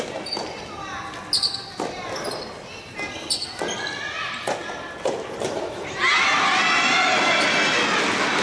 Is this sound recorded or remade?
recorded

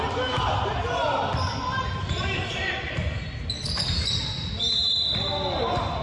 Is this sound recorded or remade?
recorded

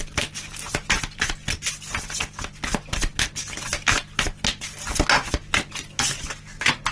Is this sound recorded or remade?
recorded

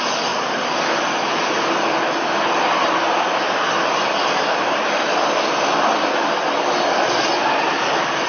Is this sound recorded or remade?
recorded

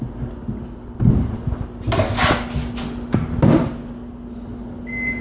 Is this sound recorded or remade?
recorded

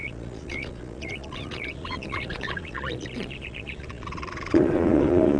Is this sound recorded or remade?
remade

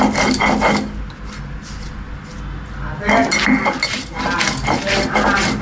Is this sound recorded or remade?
recorded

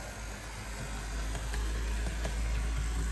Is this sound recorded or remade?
recorded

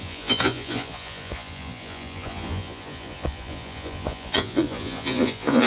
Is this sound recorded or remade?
remade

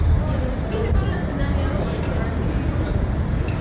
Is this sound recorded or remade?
recorded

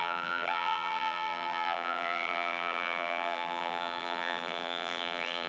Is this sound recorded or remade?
remade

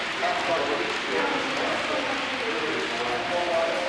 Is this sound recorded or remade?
recorded